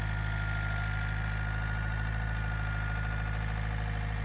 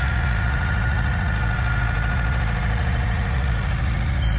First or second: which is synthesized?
second